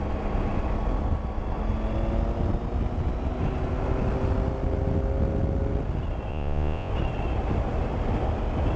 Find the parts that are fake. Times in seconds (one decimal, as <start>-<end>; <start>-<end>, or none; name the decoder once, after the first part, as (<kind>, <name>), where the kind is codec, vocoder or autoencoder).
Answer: 6.3-6.9 (vocoder, Vocos)